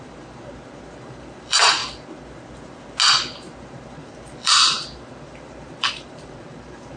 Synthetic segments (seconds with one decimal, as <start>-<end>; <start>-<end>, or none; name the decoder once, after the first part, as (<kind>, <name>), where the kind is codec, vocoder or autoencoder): 0.0-1.8 (vocoder, BigVGAN v2); 3.6-7.0